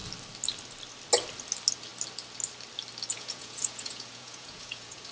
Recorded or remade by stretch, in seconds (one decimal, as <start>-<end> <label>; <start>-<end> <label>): 0.0-3.1 recorded; 3.1-5.1 remade